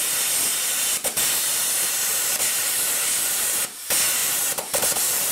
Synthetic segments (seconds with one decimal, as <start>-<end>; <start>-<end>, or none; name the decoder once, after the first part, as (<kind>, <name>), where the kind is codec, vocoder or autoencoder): 0.4-3.6 (vocoder, BigVGAN v2); 4.2-5.3

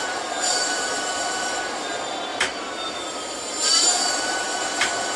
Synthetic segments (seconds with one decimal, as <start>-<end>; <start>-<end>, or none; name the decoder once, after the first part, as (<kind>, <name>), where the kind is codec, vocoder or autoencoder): 0.0-1.9 (vocoder, BigVGAN v2); 2.3-5.2

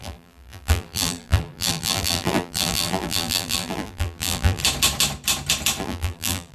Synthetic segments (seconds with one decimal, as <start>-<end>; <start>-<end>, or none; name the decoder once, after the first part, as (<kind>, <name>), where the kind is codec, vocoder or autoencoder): 0.0-4.6 (vocoder, BigVGAN v2); 5.8-6.5

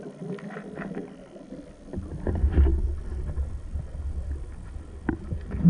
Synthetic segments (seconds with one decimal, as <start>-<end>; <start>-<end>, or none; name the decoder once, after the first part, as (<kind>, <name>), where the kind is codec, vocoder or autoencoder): none

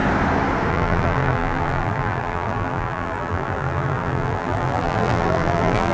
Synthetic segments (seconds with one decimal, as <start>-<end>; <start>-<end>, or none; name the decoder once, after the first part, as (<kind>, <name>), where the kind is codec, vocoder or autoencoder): 0.7-5.9 (vocoder, BigVGAN v2)